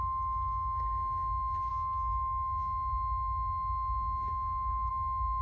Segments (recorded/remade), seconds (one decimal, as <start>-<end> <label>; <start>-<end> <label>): 0.0-5.4 recorded